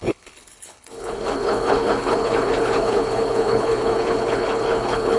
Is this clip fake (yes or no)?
yes